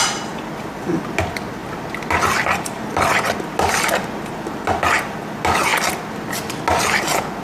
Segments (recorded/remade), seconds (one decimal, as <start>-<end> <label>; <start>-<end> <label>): 0.0-7.4 recorded